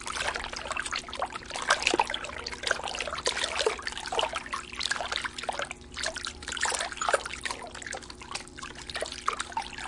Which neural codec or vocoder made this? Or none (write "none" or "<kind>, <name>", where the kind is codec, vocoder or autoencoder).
none